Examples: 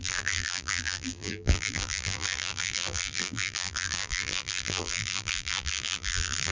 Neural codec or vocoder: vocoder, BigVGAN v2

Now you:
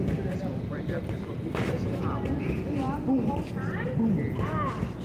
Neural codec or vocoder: none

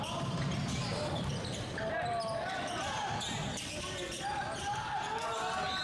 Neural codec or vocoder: none